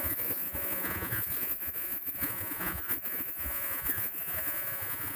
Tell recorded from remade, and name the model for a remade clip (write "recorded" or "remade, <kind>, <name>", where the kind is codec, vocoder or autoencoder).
remade, vocoder, Vocos